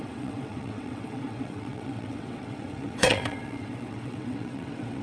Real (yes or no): no